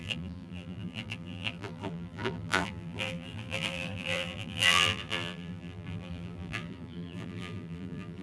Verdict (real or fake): fake